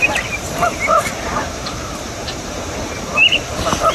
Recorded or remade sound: remade